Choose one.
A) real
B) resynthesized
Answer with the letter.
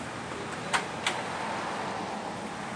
A